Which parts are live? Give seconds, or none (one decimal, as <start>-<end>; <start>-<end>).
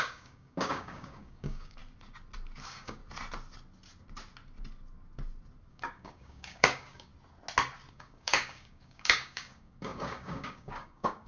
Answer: 1.8-2.6; 3.0-5.7; 7.1-7.9